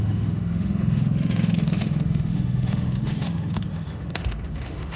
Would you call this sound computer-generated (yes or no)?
yes